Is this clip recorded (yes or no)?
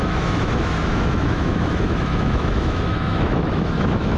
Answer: no